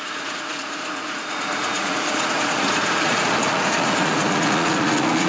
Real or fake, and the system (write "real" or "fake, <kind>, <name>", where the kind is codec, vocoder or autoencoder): fake, vocoder, Vocos